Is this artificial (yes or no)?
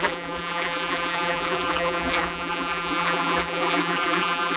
yes